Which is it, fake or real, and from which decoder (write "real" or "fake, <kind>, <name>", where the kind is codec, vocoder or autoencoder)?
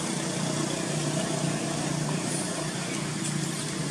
real